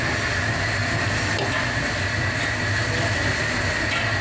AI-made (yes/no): no